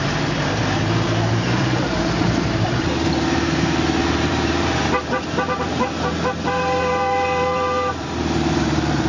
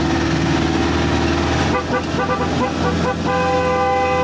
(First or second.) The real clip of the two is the second